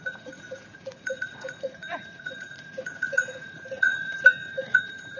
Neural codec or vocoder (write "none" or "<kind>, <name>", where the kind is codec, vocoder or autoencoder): vocoder, Vocos